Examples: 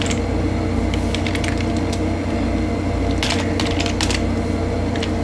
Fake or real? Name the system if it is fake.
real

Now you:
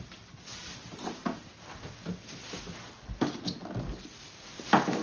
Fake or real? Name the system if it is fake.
real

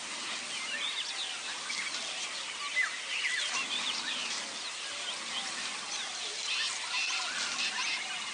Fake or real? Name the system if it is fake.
real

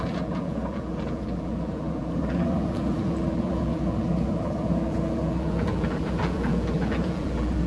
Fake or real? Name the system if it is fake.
fake, vocoder, BigVGAN v2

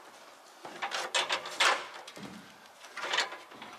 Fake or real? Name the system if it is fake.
real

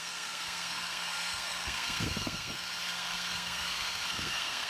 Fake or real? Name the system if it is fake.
fake, codec, SNAC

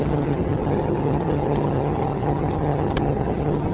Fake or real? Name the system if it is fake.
fake, vocoder, HiFi-GAN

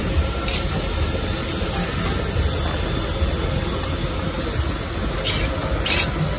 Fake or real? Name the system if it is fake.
real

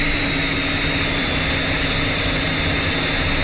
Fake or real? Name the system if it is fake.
real